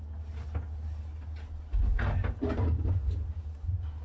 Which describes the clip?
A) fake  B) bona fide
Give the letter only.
B